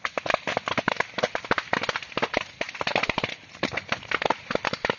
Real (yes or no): yes